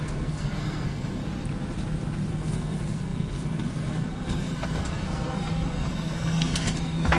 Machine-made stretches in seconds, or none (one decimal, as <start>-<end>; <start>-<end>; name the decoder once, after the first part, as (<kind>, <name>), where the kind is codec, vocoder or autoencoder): 0.0-1.2 (codec, SNAC); 2.3-7.2